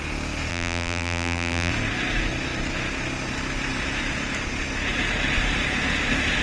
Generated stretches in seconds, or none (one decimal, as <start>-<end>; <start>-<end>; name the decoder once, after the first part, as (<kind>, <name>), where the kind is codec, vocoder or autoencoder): 0.5-1.7 (vocoder, BigVGAN v2)